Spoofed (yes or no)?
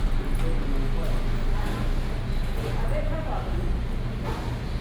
no